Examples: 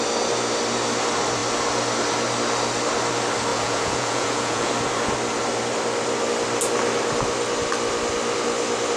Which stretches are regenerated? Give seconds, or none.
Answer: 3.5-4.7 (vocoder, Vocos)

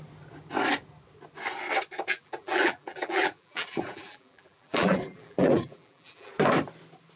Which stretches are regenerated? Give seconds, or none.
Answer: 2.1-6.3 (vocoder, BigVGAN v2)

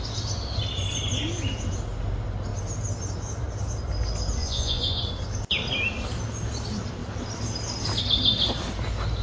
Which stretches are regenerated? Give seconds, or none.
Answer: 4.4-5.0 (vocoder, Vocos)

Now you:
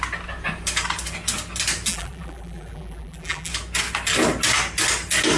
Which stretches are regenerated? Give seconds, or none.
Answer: 1.9-3.5 (vocoder, BigVGAN v2)

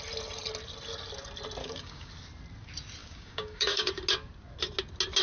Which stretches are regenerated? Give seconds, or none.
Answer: 1.6-2.1 (codec, DAC); 3.0-3.9

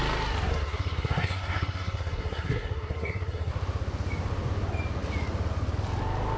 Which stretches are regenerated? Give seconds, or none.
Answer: 0.5-3.5 (codec, SNAC)

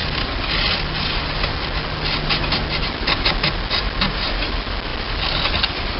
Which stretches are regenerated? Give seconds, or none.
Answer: none